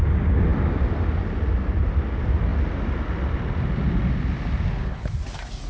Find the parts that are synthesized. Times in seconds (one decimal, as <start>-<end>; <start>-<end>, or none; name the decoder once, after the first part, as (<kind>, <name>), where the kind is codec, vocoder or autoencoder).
none